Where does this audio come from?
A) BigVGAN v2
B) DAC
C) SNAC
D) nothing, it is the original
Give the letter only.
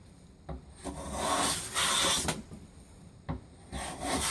D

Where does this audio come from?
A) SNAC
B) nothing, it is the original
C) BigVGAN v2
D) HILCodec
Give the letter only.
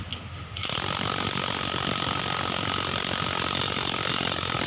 C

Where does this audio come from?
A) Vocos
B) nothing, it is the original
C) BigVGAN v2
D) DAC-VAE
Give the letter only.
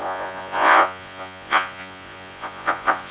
A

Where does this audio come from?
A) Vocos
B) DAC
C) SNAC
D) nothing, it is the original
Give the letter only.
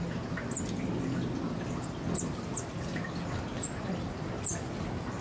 D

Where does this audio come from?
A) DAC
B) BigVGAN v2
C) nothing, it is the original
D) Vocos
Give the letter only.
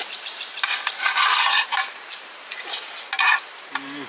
B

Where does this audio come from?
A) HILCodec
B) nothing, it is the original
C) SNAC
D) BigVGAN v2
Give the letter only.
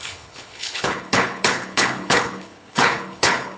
A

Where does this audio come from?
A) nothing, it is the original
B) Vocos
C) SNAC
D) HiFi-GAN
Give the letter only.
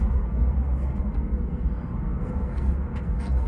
C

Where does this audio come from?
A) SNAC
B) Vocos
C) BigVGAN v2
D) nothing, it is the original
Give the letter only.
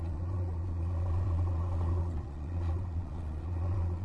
B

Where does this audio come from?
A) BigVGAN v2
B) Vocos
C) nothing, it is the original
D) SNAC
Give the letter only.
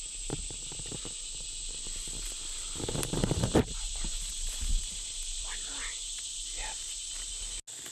C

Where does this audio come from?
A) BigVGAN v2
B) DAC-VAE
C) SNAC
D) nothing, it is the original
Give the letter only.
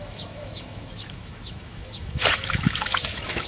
B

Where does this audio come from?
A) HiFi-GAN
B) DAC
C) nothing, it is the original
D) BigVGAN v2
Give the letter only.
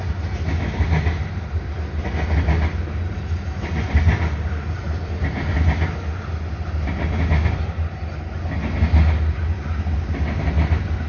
C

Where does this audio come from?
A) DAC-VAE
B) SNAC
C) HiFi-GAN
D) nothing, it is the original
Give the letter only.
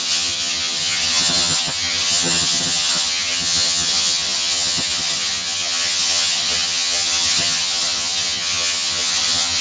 C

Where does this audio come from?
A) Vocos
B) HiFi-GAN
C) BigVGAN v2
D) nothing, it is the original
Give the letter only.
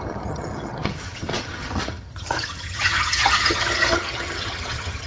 B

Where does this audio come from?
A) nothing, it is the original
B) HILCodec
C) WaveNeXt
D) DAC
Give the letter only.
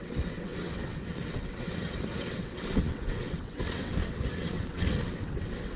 C